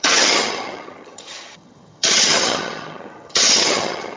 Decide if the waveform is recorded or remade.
remade